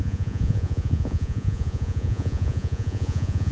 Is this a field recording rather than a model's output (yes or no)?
no